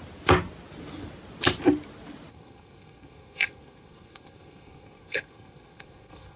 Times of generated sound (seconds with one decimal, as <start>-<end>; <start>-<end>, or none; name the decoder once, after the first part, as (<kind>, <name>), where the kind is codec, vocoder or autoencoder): 2.3-6.4 (codec, SNAC)